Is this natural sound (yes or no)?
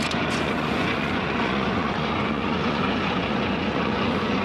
no